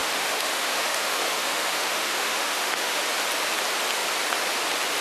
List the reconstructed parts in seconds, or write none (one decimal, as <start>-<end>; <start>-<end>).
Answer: 0.0-3.0